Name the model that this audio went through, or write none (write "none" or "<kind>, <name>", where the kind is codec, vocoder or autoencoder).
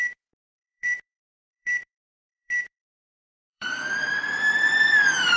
vocoder, BigVGAN v2